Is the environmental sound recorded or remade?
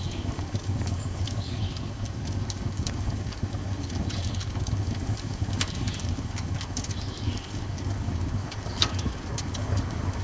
remade